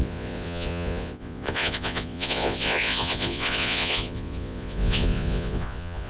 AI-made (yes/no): yes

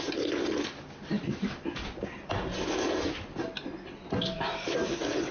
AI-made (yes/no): no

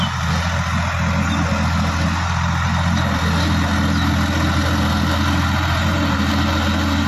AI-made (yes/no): no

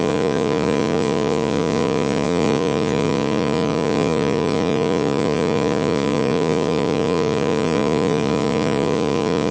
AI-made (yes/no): yes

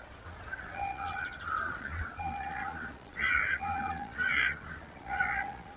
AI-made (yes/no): yes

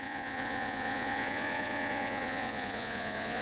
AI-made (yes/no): yes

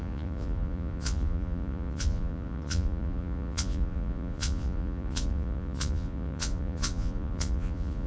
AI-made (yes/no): yes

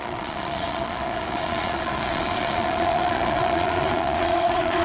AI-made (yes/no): yes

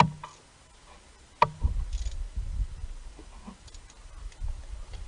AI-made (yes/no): no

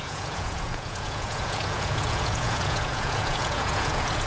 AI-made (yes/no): yes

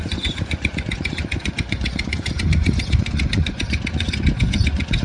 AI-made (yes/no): yes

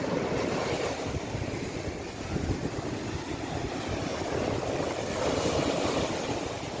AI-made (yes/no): no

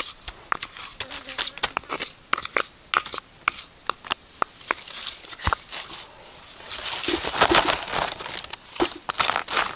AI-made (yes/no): no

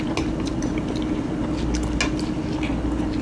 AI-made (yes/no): no